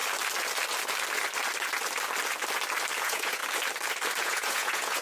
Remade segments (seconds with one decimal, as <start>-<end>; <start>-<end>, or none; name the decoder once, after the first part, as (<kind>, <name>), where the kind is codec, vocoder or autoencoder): 3.0-3.4 (vocoder, Vocos); 4.2-5.0